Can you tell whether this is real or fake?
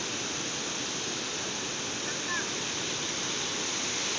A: real